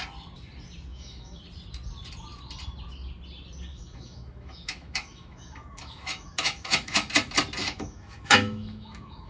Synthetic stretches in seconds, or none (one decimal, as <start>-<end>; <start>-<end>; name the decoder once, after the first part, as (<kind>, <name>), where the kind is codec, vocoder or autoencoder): 0.9-1.4 (autoencoder, DAC-VAE); 3.7-7.1; 7.6-9.3